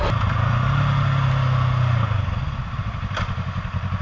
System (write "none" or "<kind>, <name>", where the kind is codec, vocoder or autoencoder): none